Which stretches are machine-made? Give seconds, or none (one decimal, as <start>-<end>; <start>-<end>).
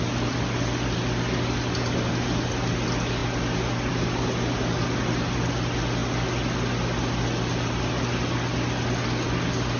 none